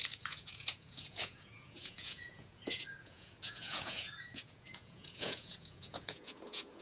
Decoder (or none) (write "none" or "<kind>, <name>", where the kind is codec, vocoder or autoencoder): vocoder, Vocos